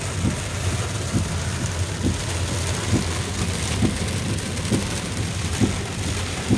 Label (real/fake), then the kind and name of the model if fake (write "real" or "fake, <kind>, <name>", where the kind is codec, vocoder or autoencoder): real